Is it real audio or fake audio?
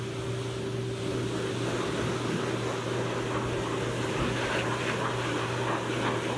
real